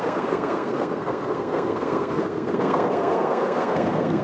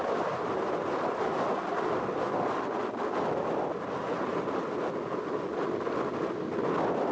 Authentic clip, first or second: second